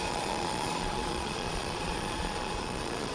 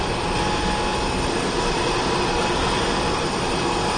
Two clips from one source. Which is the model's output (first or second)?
first